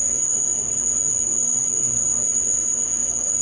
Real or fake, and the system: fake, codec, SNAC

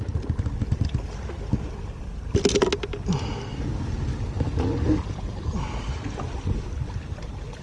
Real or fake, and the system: real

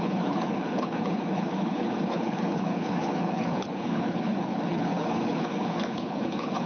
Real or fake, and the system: fake, codec, HILCodec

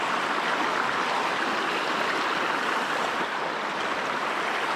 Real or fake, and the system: real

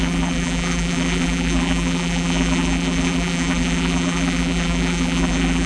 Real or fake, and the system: fake, vocoder, BigVGAN v2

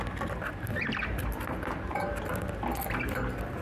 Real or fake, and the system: real